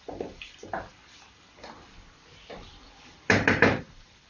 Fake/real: fake